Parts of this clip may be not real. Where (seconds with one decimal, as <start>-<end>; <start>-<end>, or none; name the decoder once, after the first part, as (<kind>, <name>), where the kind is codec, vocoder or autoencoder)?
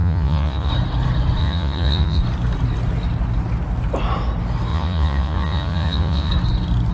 0.0-0.7 (vocoder, Vocos); 1.4-2.2; 4.7-6.3